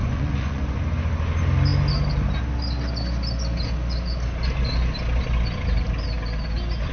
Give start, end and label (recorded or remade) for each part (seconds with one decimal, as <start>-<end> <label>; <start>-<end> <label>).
0.0-0.8 remade; 0.8-6.9 recorded